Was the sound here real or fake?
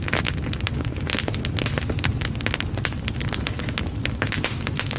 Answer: real